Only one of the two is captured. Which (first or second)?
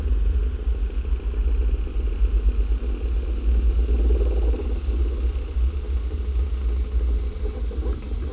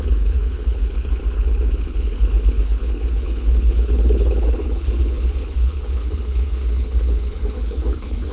first